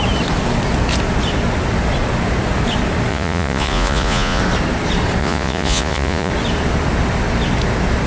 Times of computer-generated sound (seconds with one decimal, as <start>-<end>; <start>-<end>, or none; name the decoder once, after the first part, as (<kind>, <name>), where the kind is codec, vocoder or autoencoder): 3.1-4.4 (vocoder, Vocos); 5.2-6.3